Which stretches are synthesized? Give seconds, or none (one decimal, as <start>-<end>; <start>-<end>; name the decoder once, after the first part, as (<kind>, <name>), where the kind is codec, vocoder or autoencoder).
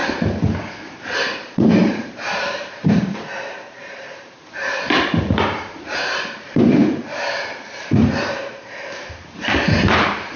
0.6-6.8 (vocoder, BigVGAN v2); 8.0-10.4